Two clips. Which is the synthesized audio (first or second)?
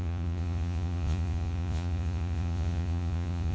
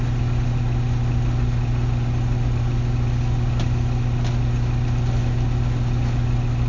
first